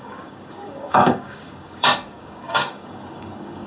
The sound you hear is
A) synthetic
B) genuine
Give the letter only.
A